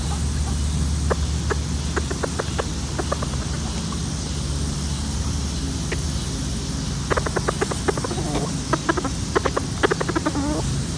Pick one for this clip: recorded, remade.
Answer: recorded